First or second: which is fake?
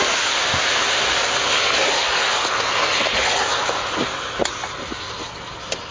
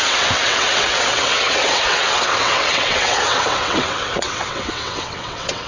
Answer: second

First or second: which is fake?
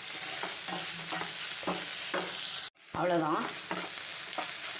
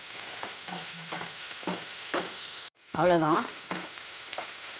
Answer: second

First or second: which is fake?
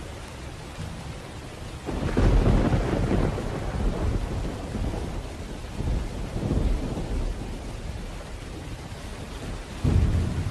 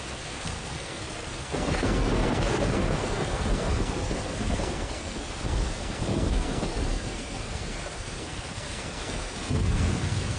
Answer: second